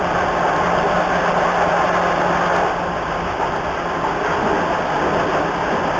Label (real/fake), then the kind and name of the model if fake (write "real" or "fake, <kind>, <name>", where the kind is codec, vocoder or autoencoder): real